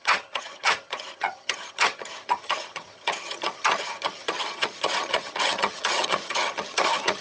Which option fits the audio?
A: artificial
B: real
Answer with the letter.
A